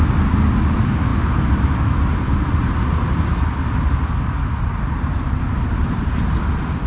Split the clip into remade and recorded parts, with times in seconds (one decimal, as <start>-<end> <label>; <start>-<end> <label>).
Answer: 0.0-6.9 recorded